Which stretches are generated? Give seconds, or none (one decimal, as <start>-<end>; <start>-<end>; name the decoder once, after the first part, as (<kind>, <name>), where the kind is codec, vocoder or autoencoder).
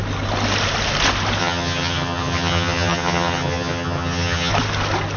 1.4-4.5 (vocoder, HiFi-GAN)